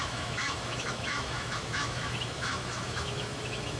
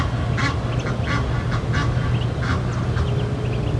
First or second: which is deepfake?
first